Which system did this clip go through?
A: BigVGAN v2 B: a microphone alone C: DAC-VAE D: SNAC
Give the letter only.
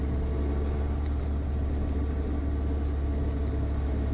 B